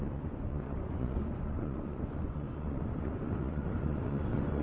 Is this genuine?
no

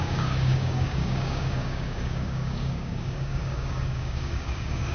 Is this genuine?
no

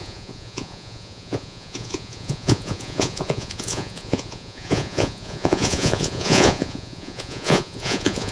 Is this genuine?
no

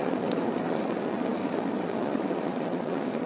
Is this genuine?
no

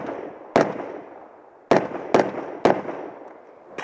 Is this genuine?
yes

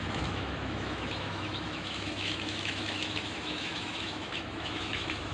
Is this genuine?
no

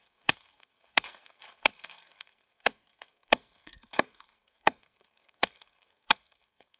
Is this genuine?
no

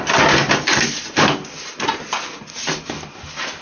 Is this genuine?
yes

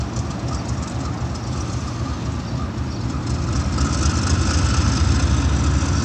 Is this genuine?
yes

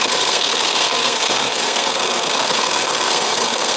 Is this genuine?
no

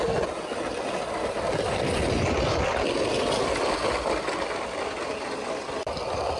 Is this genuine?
yes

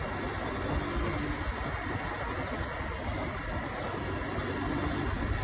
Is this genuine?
yes